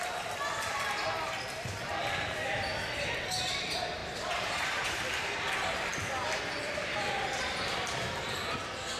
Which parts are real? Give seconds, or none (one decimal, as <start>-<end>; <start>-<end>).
0.0-4.0; 5.1-9.0